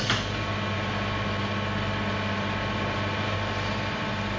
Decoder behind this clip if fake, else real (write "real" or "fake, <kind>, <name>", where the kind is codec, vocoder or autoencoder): real